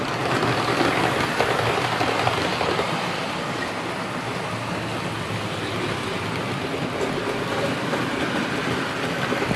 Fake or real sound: real